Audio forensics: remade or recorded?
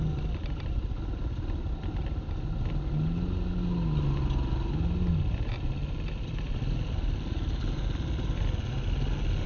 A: recorded